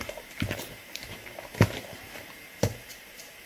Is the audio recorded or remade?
remade